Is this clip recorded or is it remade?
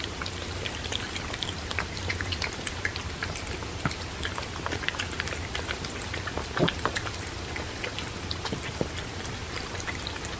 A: recorded